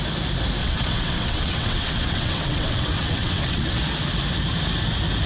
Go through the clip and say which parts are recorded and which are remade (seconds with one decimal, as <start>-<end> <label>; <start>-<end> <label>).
0.0-0.6 recorded; 0.6-3.8 remade; 3.8-5.3 recorded

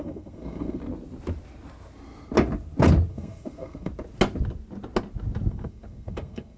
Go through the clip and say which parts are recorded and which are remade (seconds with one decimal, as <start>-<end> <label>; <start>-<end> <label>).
0.0-0.8 remade; 0.8-3.1 recorded; 3.1-3.9 remade; 3.9-5.5 recorded; 5.5-6.6 remade

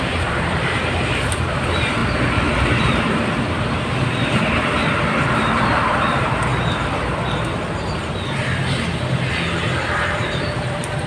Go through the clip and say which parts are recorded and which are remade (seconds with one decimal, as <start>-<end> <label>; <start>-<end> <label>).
0.0-2.0 remade; 2.0-2.7 recorded; 2.7-4.8 remade; 4.8-5.3 recorded; 5.3-6.5 remade; 6.5-9.6 recorded; 9.6-11.1 remade

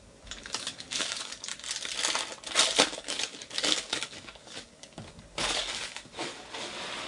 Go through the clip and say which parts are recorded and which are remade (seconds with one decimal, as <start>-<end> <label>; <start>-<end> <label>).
0.0-1.5 remade; 1.5-2.8 recorded; 2.8-6.3 remade; 6.3-7.1 recorded